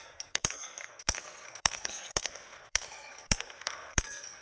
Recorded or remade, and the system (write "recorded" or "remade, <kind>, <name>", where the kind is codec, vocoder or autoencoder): remade, codec, SNAC